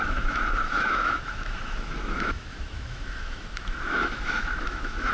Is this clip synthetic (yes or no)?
yes